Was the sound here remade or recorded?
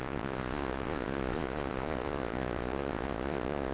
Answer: remade